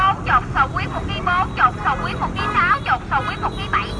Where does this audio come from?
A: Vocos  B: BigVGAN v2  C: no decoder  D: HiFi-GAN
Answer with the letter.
C